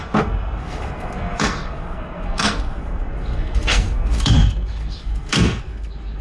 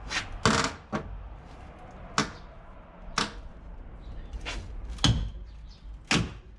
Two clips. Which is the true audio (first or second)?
second